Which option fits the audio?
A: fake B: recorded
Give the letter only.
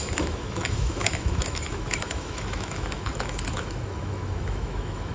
A